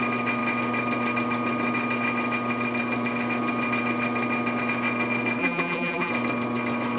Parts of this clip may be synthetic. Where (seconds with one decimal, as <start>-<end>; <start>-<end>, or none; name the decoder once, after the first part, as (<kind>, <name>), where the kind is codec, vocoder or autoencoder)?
5.4-6.1 (vocoder, BigVGAN v2)